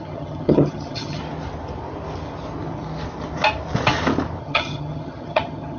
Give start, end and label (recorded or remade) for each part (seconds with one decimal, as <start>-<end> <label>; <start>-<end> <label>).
0.0-1.2 remade; 1.2-4.4 recorded; 4.4-5.8 remade